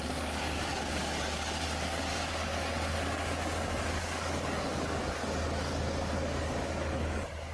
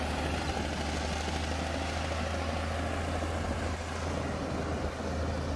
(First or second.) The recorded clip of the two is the second